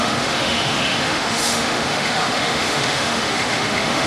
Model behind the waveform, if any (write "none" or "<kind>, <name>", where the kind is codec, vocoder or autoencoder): autoencoder, DAC-VAE